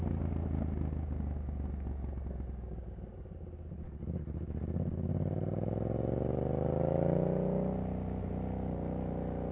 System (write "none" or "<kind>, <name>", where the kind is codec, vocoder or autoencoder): none